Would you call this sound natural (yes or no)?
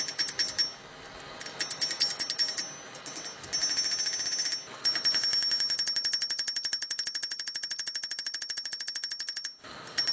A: yes